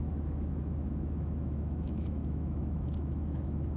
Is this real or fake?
fake